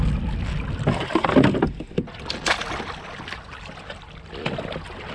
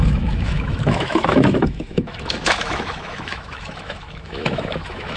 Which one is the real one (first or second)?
first